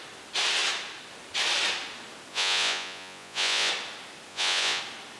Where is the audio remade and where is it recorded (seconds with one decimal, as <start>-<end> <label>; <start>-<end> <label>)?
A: 0.0-2.3 recorded; 2.3-3.7 remade; 3.7-4.3 recorded; 4.3-4.8 remade; 4.8-5.2 recorded